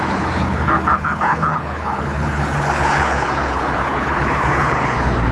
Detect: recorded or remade remade